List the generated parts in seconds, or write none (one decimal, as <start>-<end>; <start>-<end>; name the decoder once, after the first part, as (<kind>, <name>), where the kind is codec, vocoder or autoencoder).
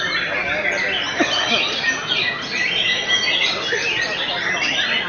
1.1-2.3 (vocoder, BigVGAN v2)